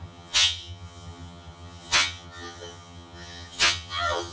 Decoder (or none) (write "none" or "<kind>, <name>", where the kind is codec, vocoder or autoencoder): vocoder, HiFi-GAN